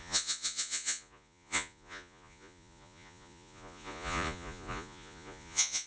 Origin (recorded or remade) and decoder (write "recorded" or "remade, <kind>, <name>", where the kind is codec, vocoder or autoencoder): remade, vocoder, Vocos